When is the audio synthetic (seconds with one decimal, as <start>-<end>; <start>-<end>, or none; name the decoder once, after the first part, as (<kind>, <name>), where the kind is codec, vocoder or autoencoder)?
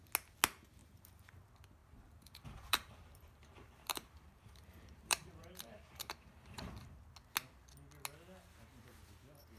0.8-1.4 (vocoder, BigVGAN v2); 1.8-7.0